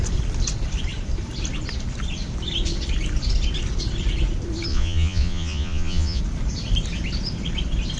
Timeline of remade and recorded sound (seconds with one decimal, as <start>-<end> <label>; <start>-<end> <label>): 0.0-4.7 recorded; 4.7-6.2 remade; 6.2-8.0 recorded